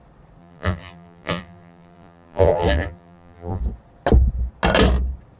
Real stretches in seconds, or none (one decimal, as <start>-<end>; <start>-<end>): 0.0-0.4; 3.6-5.4